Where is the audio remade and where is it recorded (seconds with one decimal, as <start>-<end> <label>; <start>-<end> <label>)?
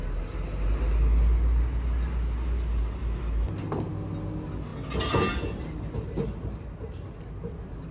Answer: 0.0-3.0 recorded; 3.0-3.5 remade; 3.5-7.9 recorded